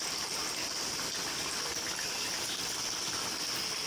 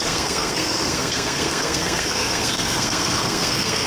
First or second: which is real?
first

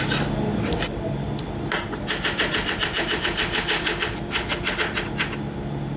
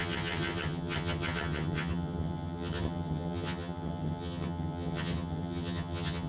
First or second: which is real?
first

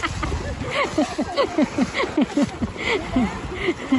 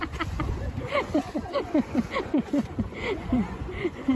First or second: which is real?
first